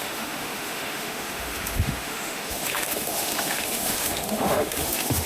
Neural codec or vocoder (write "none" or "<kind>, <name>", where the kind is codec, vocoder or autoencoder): autoencoder, DAC-VAE